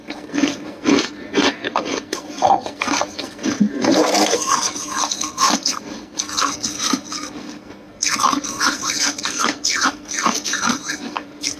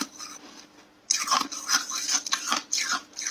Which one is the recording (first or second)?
second